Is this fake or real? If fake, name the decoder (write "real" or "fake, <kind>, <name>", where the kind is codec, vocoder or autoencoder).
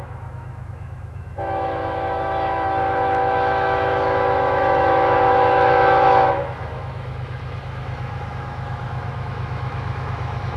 fake, autoencoder, DAC-VAE